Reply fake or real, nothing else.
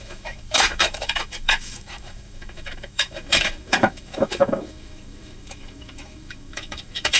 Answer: fake